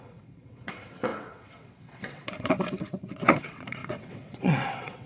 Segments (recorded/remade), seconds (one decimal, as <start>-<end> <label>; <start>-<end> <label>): 0.0-5.1 remade